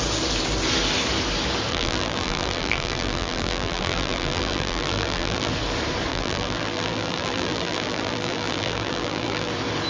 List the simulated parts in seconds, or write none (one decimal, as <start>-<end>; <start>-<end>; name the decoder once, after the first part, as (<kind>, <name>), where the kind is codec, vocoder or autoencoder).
1.7-5.5 (vocoder, BigVGAN v2); 6.1-9.5